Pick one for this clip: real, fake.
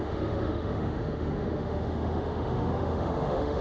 fake